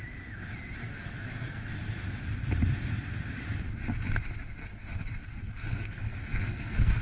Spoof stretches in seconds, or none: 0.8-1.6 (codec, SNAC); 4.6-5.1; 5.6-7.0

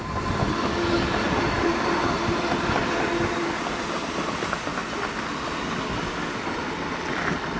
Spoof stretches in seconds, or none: none

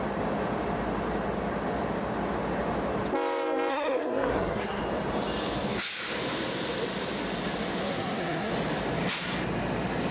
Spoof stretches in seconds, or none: 3.7-4.8 (codec, SNAC); 7.8-8.5